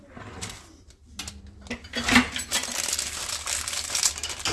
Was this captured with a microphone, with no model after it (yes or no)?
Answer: yes